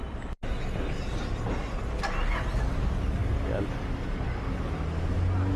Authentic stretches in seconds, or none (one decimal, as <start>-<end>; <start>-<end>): 0.0-3.2; 4.5-5.6